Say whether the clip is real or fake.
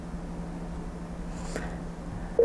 real